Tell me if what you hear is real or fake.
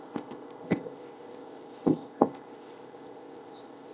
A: fake